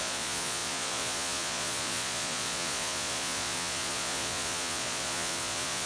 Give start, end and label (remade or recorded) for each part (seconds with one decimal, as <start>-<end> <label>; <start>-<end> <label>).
0.0-5.9 remade